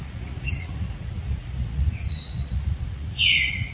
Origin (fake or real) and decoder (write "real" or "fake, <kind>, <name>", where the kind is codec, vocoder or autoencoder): fake, vocoder, Vocos